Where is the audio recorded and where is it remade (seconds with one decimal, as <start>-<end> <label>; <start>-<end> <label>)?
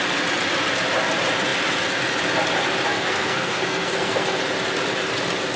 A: 0.0-2.9 recorded; 2.9-4.4 remade; 4.4-5.6 recorded